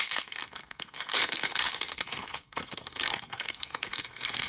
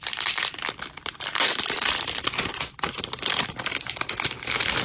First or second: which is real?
second